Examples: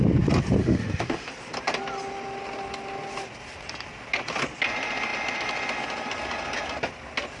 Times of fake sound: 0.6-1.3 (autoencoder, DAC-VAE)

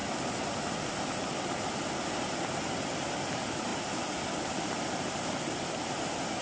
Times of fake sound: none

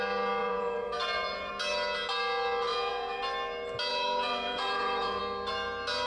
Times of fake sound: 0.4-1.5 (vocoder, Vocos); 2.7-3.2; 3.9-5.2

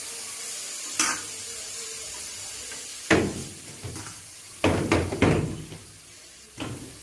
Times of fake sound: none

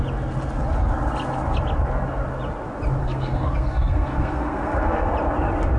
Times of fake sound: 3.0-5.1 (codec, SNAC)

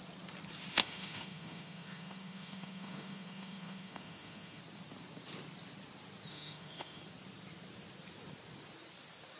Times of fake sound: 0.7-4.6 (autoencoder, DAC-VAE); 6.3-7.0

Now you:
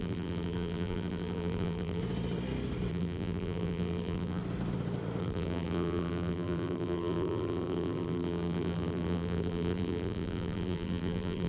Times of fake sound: 0.0-2.0 (vocoder, BigVGAN v2); 2.9-4.4; 5.2-11.5